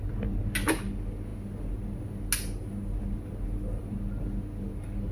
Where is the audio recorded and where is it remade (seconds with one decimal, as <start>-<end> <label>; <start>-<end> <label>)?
0.0-5.1 recorded